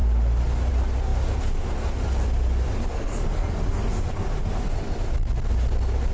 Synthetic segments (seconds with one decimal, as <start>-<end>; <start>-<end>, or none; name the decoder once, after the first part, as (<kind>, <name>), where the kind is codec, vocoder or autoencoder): 2.9-3.8 (codec, SNAC)